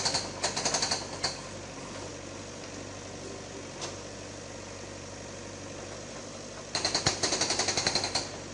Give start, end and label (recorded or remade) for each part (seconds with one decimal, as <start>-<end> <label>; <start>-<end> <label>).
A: 0.0-8.5 recorded